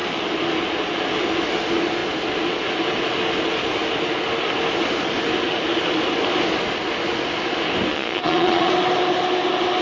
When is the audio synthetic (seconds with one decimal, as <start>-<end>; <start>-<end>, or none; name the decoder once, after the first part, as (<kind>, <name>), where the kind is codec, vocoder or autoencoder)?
7.9-8.7 (vocoder, Vocos)